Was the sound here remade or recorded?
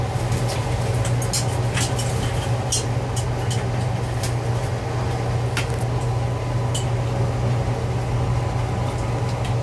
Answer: recorded